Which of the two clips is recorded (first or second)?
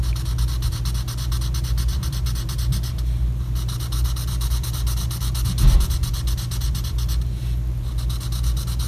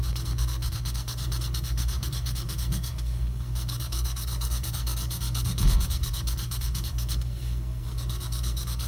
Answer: first